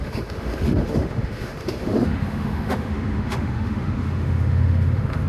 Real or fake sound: fake